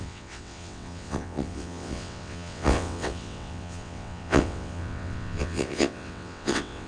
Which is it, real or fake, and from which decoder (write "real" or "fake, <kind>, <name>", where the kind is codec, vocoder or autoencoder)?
fake, vocoder, WaveNeXt